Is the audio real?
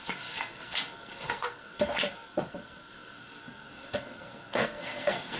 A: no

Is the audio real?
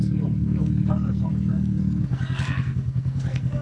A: no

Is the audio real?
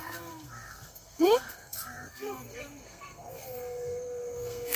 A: no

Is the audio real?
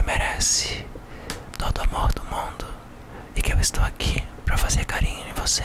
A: yes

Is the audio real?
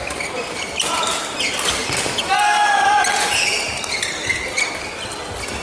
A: yes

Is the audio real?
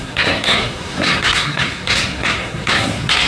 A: no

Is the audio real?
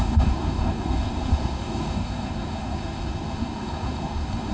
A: no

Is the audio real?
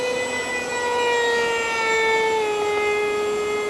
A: yes